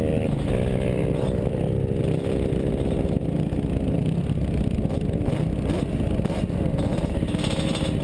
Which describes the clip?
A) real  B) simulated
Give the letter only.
A